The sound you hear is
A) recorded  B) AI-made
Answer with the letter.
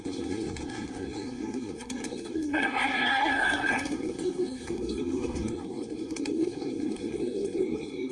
B